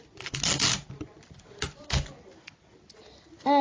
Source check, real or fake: real